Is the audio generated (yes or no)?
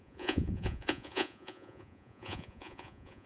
yes